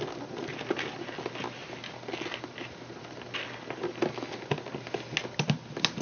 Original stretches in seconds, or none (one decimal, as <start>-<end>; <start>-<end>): 0.0-6.0